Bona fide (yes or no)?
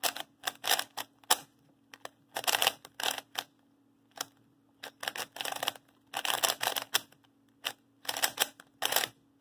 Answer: yes